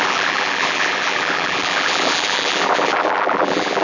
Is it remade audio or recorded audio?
remade